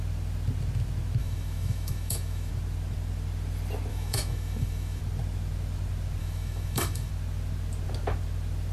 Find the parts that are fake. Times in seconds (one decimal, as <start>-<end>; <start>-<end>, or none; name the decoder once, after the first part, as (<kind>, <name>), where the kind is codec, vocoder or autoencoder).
1.2-2.5 (autoencoder, DAC-VAE); 3.9-5.0; 6.2-7.1